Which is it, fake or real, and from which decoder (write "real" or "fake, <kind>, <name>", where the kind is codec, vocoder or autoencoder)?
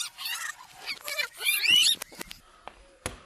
real